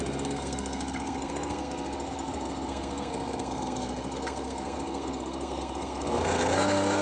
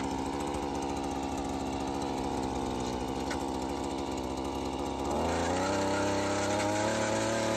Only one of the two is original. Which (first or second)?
second